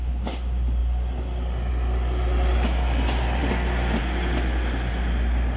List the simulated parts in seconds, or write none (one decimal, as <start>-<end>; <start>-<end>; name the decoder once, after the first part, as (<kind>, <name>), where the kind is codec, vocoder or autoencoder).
none